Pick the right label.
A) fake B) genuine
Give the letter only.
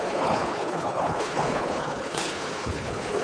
A